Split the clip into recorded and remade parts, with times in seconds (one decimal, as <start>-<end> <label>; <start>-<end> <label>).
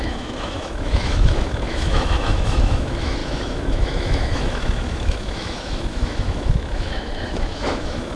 0.0-8.2 remade